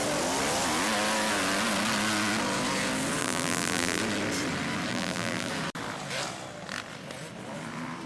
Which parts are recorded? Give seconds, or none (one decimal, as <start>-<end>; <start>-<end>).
0.0-3.2; 4.0-4.9; 5.5-8.1